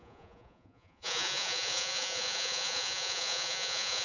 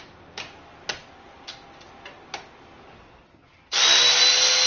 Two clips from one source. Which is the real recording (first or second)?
second